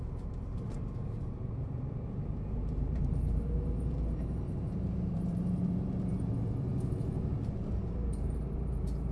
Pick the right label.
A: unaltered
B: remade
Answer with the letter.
B